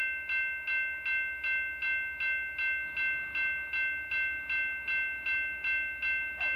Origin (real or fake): real